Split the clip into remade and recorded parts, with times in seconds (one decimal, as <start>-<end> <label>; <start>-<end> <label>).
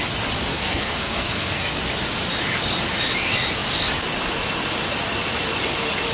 0.0-0.5 recorded; 0.5-1.8 remade; 1.8-6.1 recorded